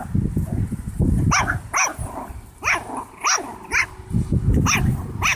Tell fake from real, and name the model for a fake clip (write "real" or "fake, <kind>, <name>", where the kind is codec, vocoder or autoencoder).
real